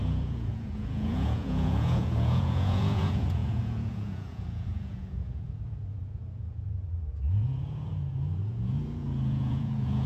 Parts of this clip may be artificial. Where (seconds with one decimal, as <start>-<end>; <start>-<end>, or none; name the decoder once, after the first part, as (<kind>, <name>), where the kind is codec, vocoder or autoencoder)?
0.0-10.1 (vocoder, Vocos)